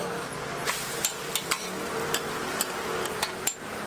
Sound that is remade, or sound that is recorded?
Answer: recorded